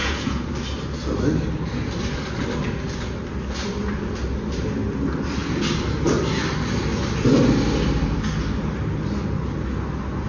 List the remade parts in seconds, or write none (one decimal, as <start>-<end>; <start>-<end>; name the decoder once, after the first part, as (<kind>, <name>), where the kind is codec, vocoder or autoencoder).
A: 0.0-0.5 (vocoder, Vocos)